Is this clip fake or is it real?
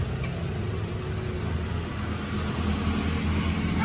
real